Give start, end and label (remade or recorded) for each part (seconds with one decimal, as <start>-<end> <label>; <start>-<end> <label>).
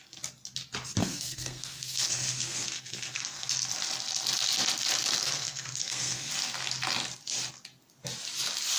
0.0-1.0 recorded; 1.0-3.5 remade; 3.5-5.2 recorded; 5.2-6.3 remade; 6.3-8.8 recorded